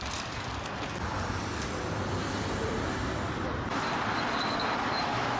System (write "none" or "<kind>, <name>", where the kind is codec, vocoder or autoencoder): none